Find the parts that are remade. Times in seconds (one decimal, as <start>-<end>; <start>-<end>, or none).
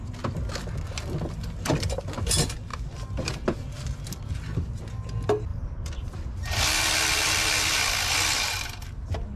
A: 2.7-4.2; 5.5-7.6